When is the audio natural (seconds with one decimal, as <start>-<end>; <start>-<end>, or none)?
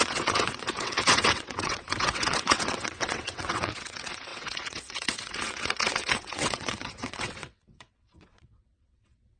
none